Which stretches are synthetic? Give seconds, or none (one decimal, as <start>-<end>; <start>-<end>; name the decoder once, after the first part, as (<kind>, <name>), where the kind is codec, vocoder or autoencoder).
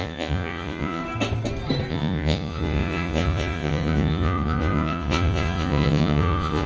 0.0-1.0 (vocoder, Vocos); 1.9-6.7